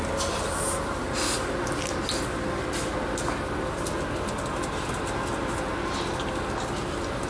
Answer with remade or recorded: recorded